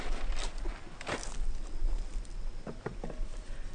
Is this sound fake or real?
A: real